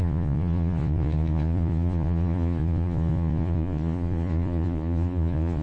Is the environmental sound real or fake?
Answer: fake